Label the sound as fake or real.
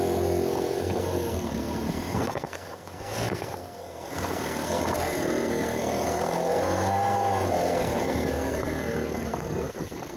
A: fake